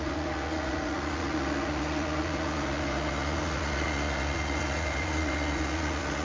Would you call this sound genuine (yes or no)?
no